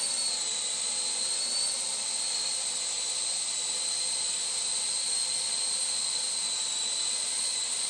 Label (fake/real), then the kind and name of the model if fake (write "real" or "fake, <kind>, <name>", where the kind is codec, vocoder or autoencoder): real